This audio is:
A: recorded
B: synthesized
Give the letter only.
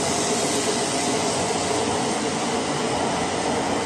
B